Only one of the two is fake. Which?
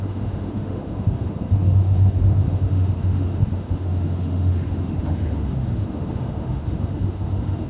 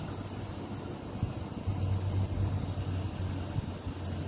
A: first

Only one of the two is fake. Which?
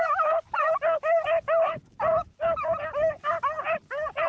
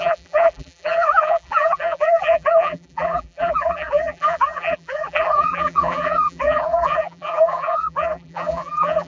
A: second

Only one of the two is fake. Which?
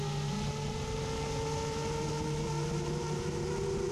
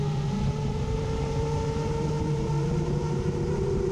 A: second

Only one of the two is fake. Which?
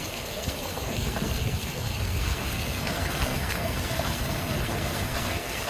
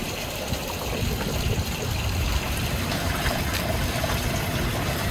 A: first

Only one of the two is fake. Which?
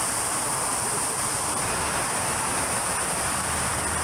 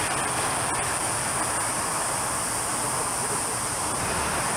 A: first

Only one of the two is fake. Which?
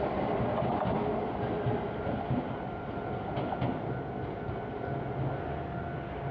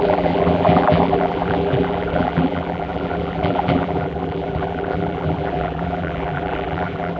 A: second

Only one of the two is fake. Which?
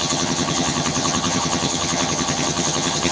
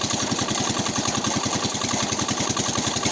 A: first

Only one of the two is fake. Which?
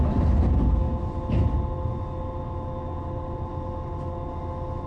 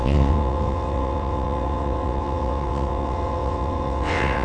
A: second